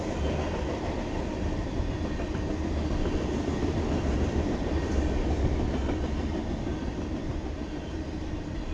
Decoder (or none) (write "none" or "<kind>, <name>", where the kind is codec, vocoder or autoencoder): none